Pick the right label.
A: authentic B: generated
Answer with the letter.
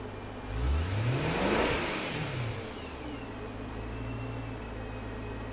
A